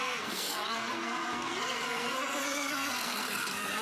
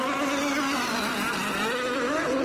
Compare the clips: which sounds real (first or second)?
second